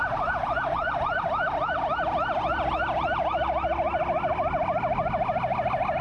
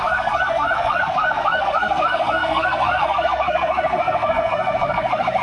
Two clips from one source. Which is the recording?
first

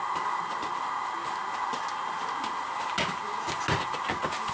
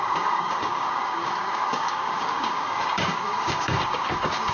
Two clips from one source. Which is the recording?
first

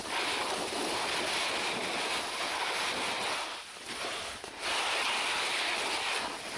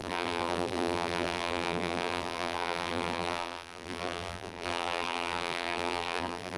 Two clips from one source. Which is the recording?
first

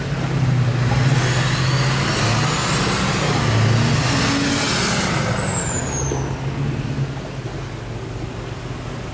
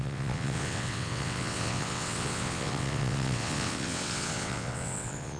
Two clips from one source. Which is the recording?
first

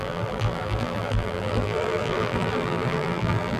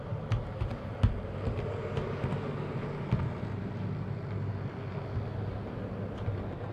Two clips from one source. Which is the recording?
second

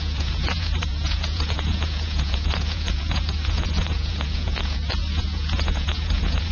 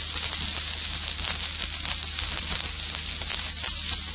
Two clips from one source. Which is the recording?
second